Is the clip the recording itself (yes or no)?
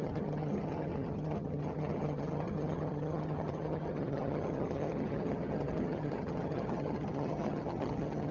no